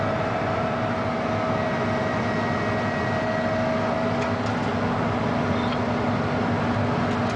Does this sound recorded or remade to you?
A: recorded